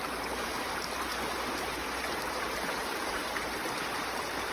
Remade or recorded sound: remade